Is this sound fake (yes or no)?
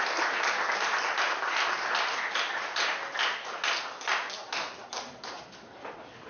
no